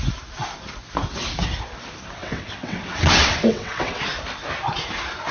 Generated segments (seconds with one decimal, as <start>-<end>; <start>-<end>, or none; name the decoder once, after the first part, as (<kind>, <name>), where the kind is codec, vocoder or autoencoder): 2.2-4.0 (vocoder, WaveNeXt)